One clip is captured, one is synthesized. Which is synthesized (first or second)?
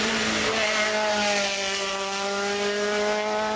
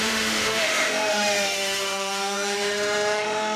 second